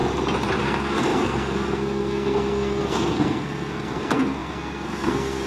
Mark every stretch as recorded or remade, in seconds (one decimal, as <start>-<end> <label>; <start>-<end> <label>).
0.0-0.6 recorded; 0.6-5.5 remade